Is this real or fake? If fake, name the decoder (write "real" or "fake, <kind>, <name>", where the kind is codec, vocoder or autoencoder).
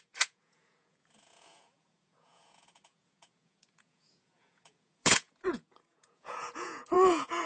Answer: fake, vocoder, Vocos